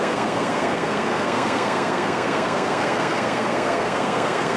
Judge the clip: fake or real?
fake